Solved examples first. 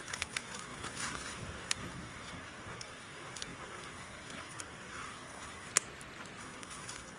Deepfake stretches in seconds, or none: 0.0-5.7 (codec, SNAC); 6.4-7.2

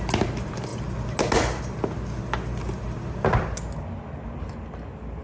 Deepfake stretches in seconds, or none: none

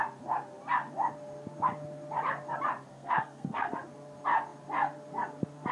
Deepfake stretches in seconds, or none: 2.9-3.7 (codec, SNAC)

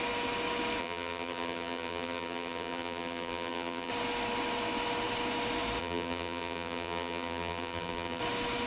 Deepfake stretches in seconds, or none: 0.8-3.9 (vocoder, BigVGAN v2); 5.8-8.2

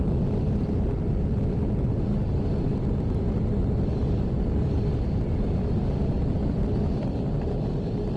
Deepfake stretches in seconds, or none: none

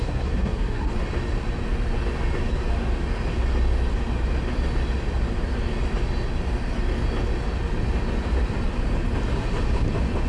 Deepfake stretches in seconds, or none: 0.0-0.9 (codec, SNAC)